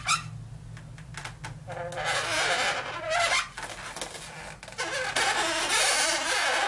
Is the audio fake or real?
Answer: real